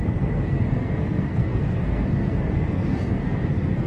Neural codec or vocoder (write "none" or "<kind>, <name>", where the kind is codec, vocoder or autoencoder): codec, SNAC